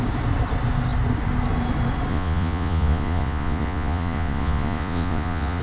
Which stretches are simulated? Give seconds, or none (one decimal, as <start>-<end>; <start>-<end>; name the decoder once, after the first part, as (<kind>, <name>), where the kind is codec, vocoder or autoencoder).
2.1-5.6 (vocoder, Vocos)